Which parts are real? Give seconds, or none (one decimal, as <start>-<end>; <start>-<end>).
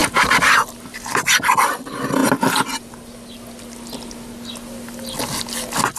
1.2-6.0